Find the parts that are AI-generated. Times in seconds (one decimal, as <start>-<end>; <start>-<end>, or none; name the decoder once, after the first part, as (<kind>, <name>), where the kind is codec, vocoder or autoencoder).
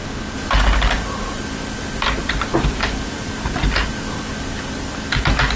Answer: 0.0-0.6 (vocoder, BigVGAN v2); 2.5-3.2